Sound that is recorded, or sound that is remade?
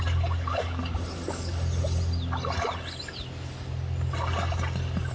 recorded